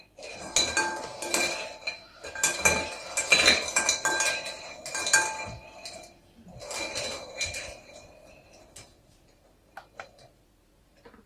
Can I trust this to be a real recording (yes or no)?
yes